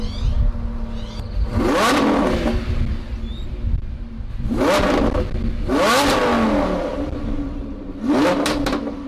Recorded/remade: recorded